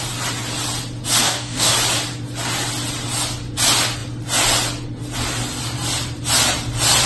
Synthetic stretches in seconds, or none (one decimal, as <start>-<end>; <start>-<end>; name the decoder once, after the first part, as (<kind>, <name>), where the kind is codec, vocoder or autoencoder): 1.2-1.7 (codec, DAC)